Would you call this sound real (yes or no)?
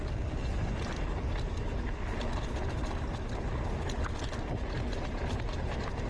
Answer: yes